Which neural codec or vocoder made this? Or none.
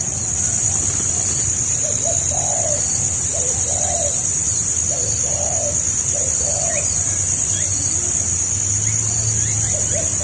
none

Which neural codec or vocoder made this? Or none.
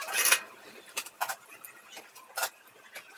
none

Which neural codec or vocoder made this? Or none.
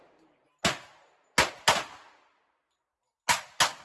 none